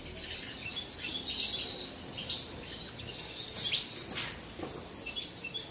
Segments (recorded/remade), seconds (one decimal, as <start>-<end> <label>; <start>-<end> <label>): 0.0-0.7 recorded; 0.7-3.1 remade; 3.1-5.7 recorded